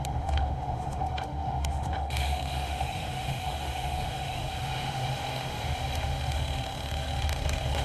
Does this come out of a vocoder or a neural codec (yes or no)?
yes